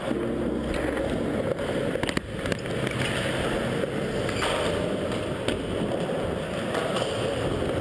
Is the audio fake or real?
real